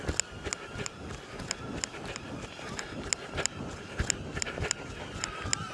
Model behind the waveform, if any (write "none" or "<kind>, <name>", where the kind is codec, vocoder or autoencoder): none